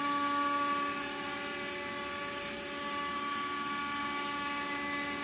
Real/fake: real